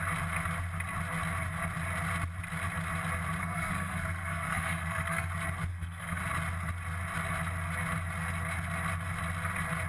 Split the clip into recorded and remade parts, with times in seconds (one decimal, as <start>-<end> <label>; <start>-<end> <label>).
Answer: 0.0-3.4 recorded; 3.4-5.3 remade; 5.3-5.7 recorded; 5.7-6.2 remade; 6.2-9.9 recorded